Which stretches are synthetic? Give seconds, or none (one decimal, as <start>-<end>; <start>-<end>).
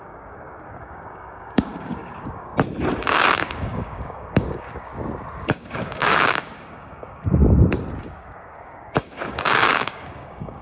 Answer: 0.0-2.5; 3.1-4.9; 5.4-7.4; 8.0-10.6